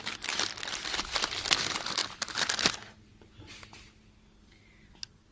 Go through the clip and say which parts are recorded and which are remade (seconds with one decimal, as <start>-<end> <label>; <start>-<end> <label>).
0.0-5.3 recorded